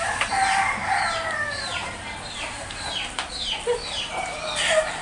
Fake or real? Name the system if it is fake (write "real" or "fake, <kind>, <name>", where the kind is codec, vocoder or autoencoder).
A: fake, vocoder, BigVGAN v2